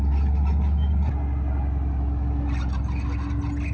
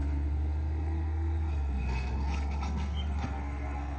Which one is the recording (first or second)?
first